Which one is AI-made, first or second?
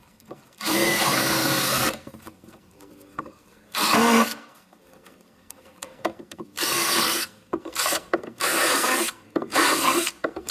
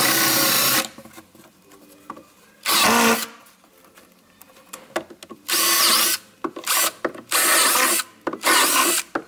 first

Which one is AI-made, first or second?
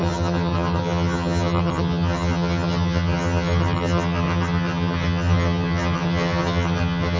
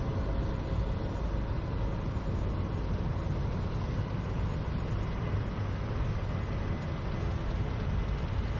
first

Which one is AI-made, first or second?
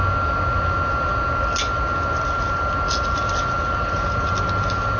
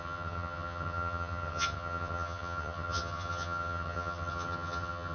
second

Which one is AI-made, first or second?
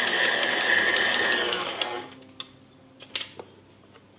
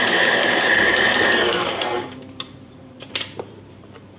second